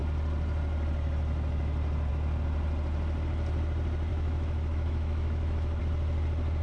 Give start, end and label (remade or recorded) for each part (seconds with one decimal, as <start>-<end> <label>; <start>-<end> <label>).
0.0-4.1 recorded; 4.1-5.8 remade; 5.8-6.6 recorded

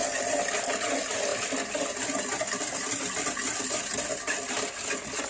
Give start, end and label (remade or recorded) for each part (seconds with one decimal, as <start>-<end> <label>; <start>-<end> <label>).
0.0-5.3 recorded

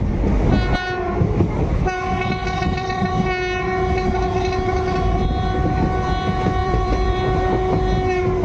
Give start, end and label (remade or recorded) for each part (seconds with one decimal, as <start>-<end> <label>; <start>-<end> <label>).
0.0-2.4 recorded; 2.4-3.1 remade; 3.1-6.6 recorded; 6.6-7.2 remade; 7.2-8.4 recorded

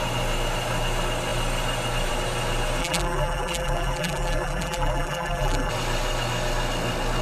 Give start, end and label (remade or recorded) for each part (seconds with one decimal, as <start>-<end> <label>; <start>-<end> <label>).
0.0-2.8 recorded; 2.8-5.7 remade; 5.7-7.2 recorded

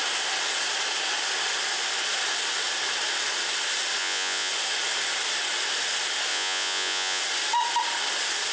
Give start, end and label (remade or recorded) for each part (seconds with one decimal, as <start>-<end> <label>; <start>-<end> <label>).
0.0-4.0 recorded; 4.0-4.5 remade; 4.5-6.3 recorded; 6.3-7.2 remade; 7.2-8.5 recorded

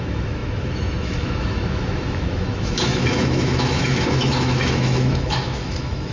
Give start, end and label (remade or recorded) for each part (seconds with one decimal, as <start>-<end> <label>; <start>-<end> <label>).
0.0-6.1 remade

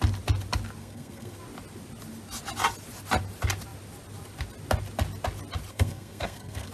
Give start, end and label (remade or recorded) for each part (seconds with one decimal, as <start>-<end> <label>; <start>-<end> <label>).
0.0-0.8 recorded; 0.8-1.4 remade; 1.4-5.7 recorded; 5.7-6.7 remade